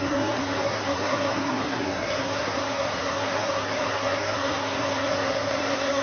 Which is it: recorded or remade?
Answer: remade